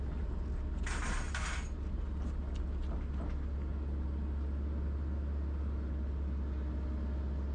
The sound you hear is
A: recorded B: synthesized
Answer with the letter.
A